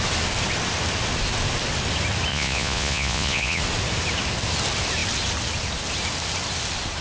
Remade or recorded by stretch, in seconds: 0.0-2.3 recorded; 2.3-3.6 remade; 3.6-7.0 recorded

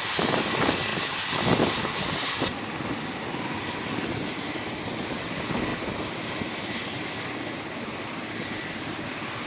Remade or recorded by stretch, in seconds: 0.0-9.5 recorded